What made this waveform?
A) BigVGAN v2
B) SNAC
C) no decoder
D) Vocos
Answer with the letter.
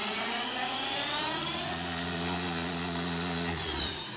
D